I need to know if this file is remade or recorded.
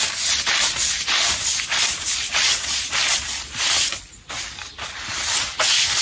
recorded